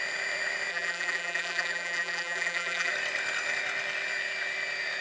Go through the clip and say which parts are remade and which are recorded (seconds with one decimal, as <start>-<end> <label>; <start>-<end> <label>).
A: 0.0-0.7 recorded; 0.7-2.9 remade; 2.9-5.0 recorded